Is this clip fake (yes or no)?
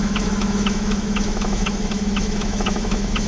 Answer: yes